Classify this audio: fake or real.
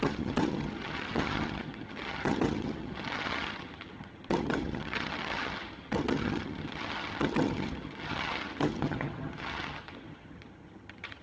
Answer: fake